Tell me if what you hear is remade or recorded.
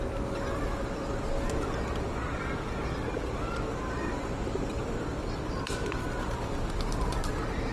recorded